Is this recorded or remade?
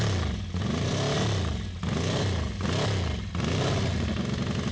recorded